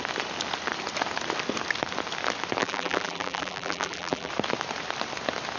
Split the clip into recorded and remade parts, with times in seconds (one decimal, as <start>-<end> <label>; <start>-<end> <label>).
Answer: 0.0-2.6 recorded; 2.6-4.3 remade; 4.3-5.6 recorded